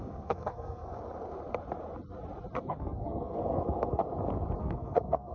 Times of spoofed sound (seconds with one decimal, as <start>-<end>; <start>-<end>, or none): 0.0-0.9; 2.6-4.0; 4.6-5.3